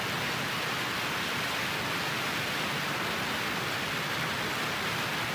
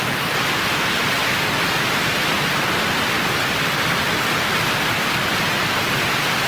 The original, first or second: first